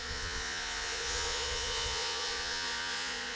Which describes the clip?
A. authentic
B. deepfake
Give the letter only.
B